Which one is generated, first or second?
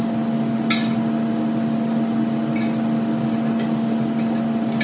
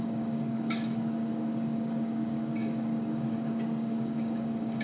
second